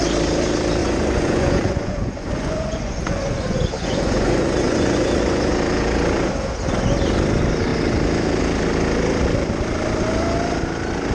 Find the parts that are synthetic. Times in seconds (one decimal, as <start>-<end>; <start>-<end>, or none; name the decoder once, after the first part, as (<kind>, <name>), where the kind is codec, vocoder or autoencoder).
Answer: 0.8-5.5 (vocoder, Vocos)